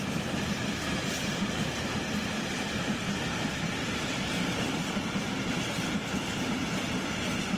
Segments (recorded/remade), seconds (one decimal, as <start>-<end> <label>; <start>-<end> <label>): 0.0-6.6 remade; 6.6-7.6 recorded